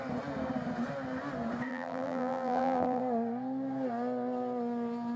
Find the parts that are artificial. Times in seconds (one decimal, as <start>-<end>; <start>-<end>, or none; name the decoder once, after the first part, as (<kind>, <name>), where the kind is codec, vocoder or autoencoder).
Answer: 1.7-3.0 (vocoder, BigVGAN v2)